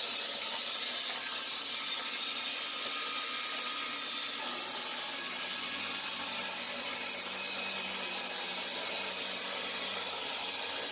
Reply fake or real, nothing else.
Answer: real